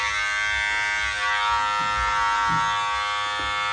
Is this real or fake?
real